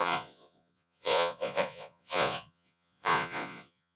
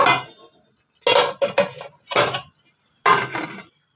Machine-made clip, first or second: first